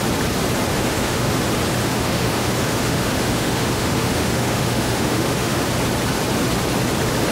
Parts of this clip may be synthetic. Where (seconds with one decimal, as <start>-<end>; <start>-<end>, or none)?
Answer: 0.7-1.4; 1.8-5.6

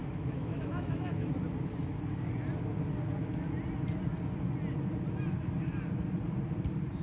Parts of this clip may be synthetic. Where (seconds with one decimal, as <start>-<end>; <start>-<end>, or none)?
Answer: 0.0-1.3